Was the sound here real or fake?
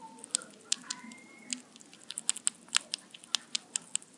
real